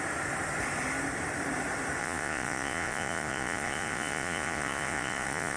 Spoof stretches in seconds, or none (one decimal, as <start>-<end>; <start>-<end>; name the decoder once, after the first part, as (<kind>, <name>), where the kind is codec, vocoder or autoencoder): 2.0-5.6 (vocoder, Vocos)